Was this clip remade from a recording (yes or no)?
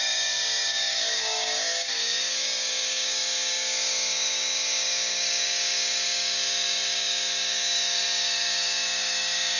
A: yes